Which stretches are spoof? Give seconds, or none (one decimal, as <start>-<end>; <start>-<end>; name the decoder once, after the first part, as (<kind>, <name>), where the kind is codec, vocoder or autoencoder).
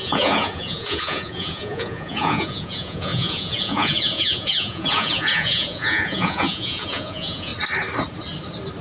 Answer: 0.0-7.5 (vocoder, Vocos)